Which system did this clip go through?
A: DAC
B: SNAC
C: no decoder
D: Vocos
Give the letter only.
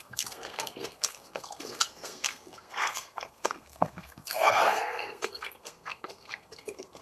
B